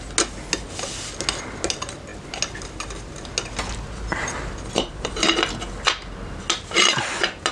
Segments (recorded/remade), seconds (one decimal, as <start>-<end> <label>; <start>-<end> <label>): 0.0-7.5 recorded

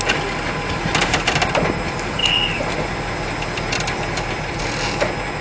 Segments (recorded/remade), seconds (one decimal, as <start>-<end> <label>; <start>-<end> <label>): 0.0-5.4 recorded

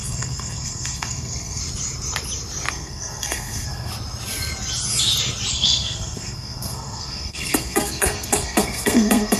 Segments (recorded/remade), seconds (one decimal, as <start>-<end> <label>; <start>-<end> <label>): 0.0-1.6 remade; 1.6-2.7 recorded; 2.7-3.9 remade; 3.9-5.5 recorded; 5.5-9.4 remade

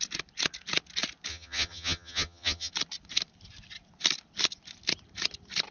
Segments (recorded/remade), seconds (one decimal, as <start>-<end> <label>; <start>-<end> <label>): 0.0-1.3 recorded; 1.3-2.7 remade; 2.7-5.7 recorded